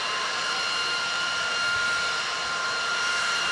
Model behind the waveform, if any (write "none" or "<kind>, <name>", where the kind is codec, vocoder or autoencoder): vocoder, BigVGAN v2